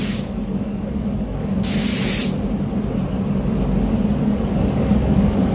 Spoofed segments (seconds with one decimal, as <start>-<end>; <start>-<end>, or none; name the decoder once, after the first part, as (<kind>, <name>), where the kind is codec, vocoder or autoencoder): 0.0-1.5 (codec, DAC); 4.2-5.5